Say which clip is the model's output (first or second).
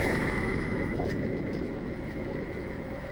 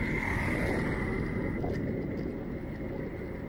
first